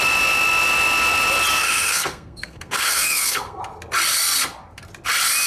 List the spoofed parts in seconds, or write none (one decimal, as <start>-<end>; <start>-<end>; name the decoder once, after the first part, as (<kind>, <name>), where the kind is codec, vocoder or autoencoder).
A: 1.5-3.6 (codec, SNAC)